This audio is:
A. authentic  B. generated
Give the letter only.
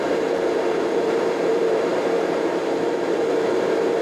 B